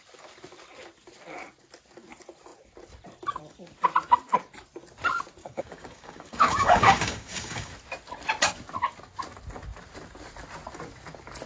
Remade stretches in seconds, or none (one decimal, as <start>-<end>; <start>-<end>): 5.4-7.7